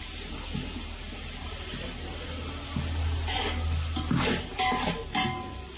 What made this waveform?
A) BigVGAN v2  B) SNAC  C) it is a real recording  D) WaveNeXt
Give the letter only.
C